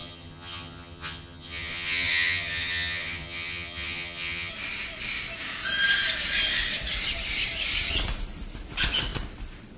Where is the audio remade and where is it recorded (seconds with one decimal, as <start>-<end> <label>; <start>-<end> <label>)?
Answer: 0.0-4.5 remade; 4.5-9.8 recorded